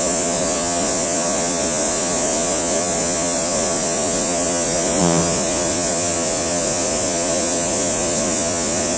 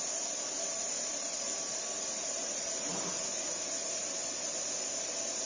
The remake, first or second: first